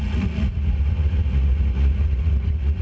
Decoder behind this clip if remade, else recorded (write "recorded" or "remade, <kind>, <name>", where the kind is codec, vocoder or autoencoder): remade, vocoder, Vocos